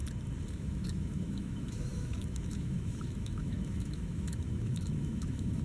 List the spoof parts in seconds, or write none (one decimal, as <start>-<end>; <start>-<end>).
0.5-5.6